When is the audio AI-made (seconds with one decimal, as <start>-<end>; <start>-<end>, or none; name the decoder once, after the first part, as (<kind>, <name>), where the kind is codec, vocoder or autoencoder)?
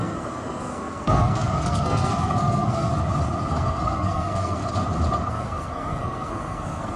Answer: 0.0-2.9 (codec, SNAC); 3.5-4.6; 5.3-7.0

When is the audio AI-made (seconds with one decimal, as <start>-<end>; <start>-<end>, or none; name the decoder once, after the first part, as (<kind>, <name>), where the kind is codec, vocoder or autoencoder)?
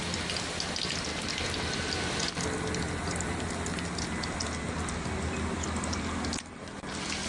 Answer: 6.3-7.3 (vocoder, BigVGAN v2)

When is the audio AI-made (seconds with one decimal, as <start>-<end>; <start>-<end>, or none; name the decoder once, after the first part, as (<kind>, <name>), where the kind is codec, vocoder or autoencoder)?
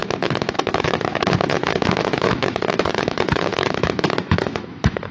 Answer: 0.0-1.1 (autoencoder, DAC-VAE); 2.1-5.1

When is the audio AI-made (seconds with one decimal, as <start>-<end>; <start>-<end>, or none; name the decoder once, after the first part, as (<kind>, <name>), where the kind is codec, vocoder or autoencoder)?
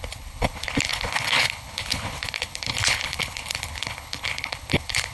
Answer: 0.0-5.1 (codec, HILCodec)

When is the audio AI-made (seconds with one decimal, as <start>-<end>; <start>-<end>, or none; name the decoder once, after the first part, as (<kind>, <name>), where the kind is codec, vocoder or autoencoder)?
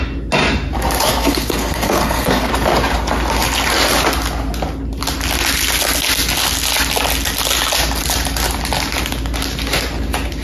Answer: 1.1-2.5 (codec, SNAC)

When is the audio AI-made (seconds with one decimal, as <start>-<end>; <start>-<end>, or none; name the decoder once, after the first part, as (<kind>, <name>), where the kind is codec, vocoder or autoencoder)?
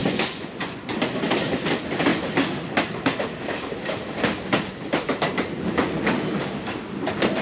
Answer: 0.0-0.8 (vocoder, Vocos)